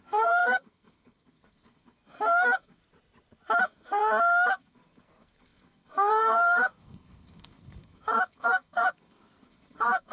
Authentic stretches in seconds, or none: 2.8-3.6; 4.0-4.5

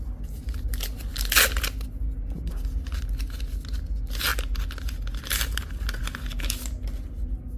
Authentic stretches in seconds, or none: 0.0-7.6

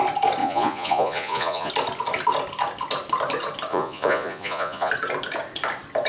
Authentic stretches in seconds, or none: 0.0-0.4; 1.7-3.7; 4.9-6.1

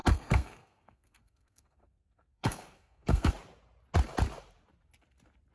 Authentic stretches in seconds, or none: 3.3-5.5